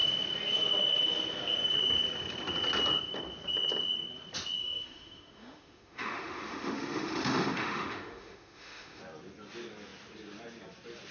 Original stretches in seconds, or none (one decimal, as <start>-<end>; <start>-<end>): 0.0-4.6; 9.0-11.1